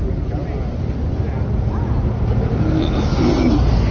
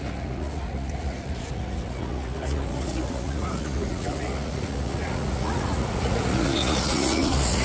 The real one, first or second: first